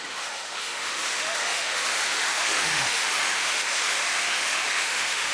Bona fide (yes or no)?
no